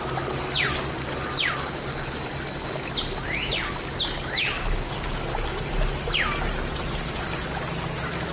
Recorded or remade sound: recorded